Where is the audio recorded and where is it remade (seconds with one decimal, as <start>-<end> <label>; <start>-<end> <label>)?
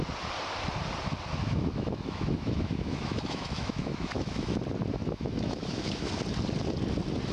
0.0-1.4 recorded; 1.4-4.6 remade; 4.6-5.0 recorded; 5.0-6.1 remade; 6.1-7.3 recorded